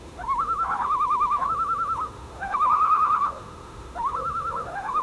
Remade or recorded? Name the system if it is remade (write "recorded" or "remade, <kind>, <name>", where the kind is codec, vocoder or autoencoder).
remade, autoencoder, DAC-VAE